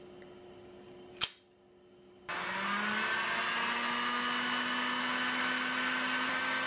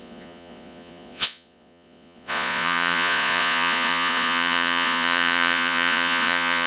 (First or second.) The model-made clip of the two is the second